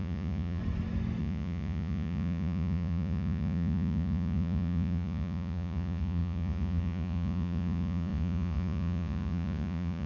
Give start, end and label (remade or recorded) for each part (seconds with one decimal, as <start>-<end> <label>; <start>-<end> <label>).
0.0-0.6 remade; 0.6-1.2 recorded; 1.2-10.1 remade